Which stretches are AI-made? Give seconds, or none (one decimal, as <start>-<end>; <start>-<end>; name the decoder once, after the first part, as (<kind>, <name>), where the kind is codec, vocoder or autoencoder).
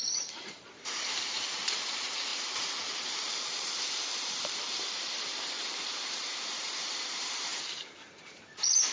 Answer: 0.0-8.9 (vocoder, BigVGAN v2)